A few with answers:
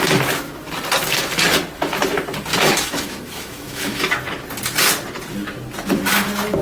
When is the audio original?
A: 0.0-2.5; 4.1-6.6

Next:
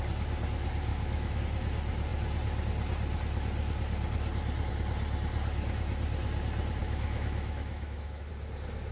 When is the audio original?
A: 0.0-0.9; 1.4-6.8; 8.3-8.9

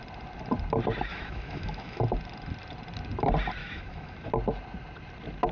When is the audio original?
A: 0.0-1.1; 2.0-3.6; 4.3-5.5

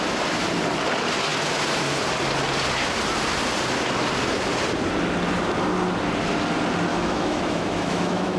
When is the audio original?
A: 0.0-6.9

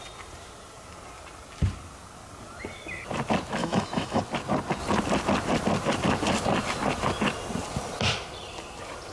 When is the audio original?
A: 0.0-3.6; 4.2-9.1

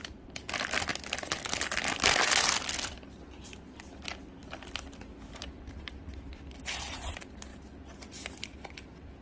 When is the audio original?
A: 0.0-9.2

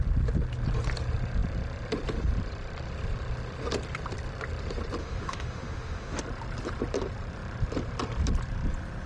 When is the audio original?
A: 0.0-5.0; 6.2-9.1